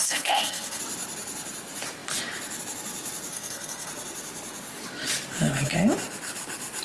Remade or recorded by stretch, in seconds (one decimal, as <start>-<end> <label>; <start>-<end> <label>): 0.0-0.8 remade; 0.8-3.3 recorded; 3.3-3.9 remade; 3.9-6.8 recorded